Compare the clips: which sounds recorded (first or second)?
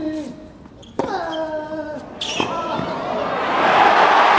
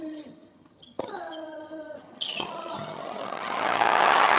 first